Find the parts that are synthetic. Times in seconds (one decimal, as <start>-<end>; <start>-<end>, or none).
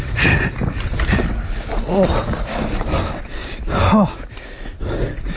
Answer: none